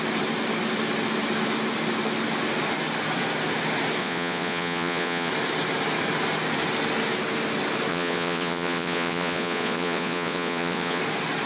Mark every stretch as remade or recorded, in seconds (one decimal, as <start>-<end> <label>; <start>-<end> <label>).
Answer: 0.0-4.0 recorded; 4.0-5.3 remade; 5.3-7.9 recorded; 7.9-11.0 remade; 11.0-11.5 recorded